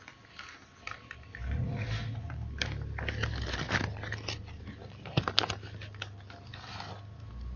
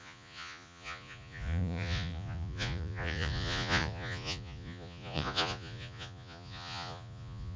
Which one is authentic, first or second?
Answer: first